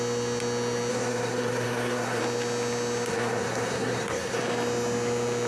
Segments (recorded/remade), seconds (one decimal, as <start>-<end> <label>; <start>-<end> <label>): 0.0-0.9 recorded; 0.9-2.2 remade; 2.2-3.1 recorded; 3.1-4.4 remade; 4.4-5.5 recorded